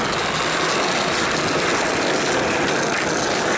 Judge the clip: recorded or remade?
recorded